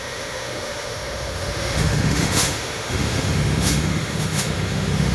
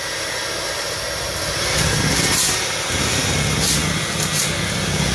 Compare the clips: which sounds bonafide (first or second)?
second